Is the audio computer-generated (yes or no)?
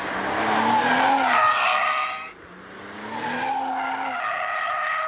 no